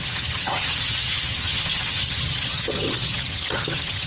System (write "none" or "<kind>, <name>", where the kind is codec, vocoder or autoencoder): vocoder, HiFi-GAN